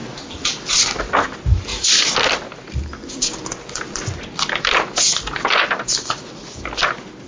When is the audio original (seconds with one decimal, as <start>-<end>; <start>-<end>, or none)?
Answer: 0.0-7.3